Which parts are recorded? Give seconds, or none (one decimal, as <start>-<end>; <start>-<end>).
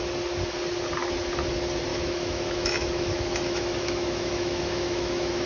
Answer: 0.0-1.9